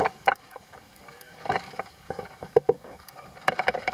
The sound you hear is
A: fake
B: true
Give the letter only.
A